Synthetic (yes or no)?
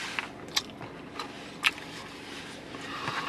no